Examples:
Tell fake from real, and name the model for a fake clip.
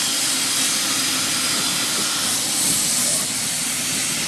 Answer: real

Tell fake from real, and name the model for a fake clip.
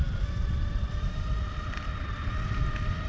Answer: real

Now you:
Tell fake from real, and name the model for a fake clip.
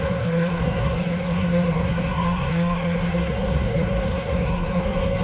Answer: fake, codec, SNAC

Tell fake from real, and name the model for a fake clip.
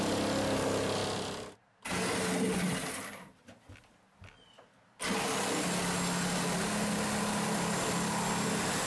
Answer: real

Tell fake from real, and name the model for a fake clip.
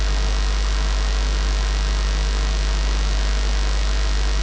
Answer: real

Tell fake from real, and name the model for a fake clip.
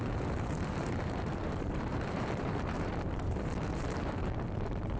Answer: fake, vocoder, BigVGAN v2